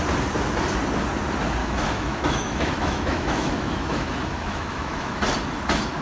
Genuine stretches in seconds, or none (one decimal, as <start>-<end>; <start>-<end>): 0.0-1.6; 5.2-6.0